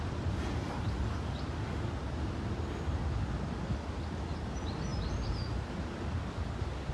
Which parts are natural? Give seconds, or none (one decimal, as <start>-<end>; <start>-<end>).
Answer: 0.0-6.9